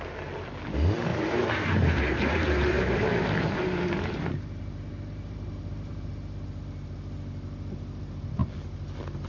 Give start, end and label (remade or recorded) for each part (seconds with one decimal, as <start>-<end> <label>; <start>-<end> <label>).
0.0-1.1 recorded; 1.1-6.1 remade; 6.1-9.3 recorded